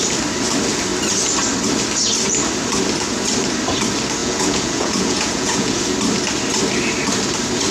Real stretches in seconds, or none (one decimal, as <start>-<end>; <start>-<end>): 0.0-4.2; 5.8-7.7